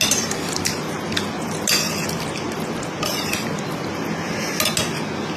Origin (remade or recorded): recorded